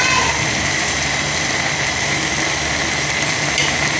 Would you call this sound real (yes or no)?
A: no